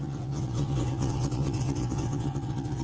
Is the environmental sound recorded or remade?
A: remade